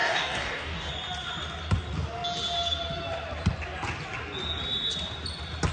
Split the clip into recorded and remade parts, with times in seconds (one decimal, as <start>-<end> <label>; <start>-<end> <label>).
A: 0.0-0.9 remade; 0.9-5.7 recorded